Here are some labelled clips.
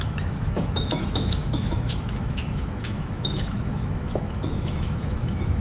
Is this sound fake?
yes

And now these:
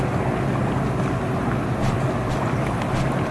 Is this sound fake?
no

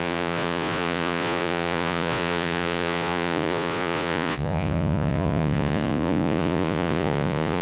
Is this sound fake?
yes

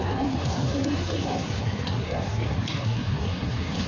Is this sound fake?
yes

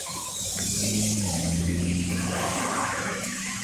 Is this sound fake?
yes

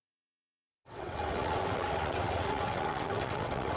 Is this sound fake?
yes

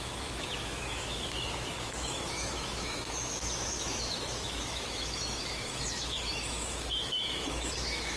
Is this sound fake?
yes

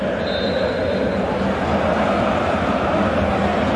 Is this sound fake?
no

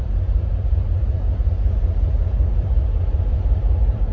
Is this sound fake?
yes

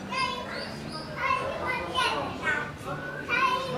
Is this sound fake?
no